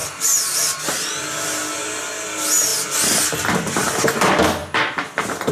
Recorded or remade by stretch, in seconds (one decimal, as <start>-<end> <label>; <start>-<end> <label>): 0.0-5.5 recorded